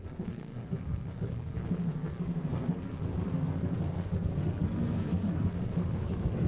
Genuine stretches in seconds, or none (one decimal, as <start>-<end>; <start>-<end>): none